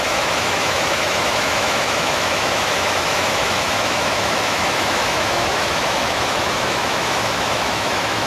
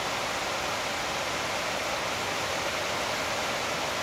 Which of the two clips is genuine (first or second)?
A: second